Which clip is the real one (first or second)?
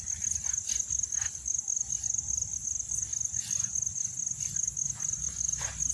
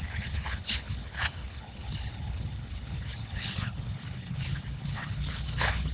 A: first